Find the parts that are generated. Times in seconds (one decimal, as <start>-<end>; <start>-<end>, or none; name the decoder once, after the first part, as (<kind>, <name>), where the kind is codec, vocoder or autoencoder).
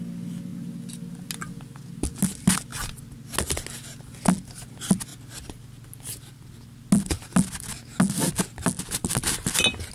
2.7-3.3 (vocoder, BigVGAN v2)